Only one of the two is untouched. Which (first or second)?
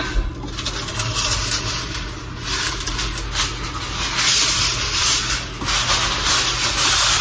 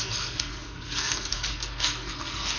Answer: first